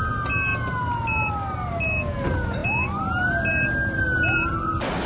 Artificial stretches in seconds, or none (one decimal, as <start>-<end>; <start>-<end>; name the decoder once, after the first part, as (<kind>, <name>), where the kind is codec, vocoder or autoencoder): none